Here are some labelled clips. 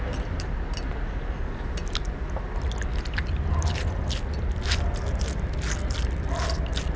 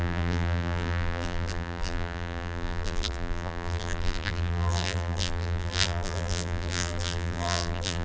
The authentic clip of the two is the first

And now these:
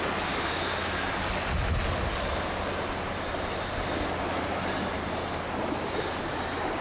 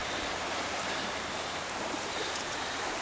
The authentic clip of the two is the first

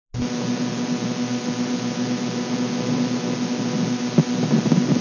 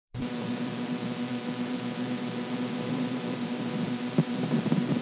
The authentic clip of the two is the first